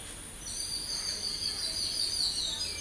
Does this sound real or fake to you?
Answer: real